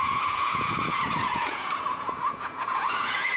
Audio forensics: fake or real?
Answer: fake